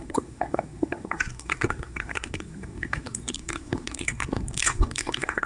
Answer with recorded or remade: remade